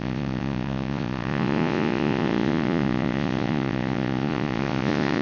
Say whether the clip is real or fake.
fake